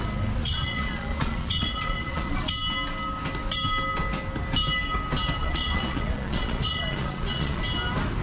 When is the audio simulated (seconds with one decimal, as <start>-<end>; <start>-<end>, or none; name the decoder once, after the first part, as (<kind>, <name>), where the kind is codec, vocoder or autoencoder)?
0.4-2.5 (vocoder, Vocos); 5.4-7.6